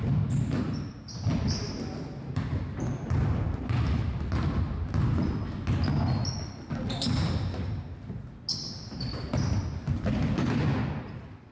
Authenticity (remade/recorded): recorded